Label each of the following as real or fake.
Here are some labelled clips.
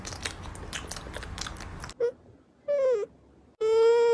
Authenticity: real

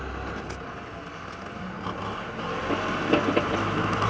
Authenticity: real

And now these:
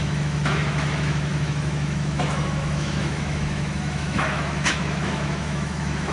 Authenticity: fake